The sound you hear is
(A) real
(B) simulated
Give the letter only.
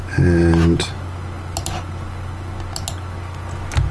A